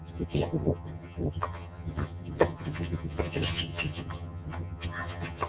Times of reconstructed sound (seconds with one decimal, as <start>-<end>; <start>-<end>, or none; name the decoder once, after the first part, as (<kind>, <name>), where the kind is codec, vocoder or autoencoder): 0.0-5.5 (vocoder, HiFi-GAN)